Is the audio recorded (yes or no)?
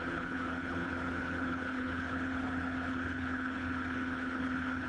no